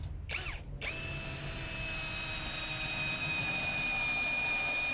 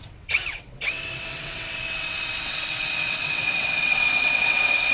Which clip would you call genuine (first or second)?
first